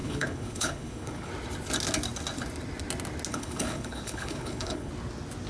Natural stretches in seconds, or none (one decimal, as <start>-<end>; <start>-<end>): 1.3-3.3; 4.9-5.5